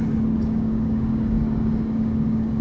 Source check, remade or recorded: remade